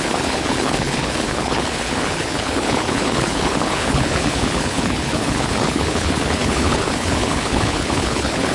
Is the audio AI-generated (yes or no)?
yes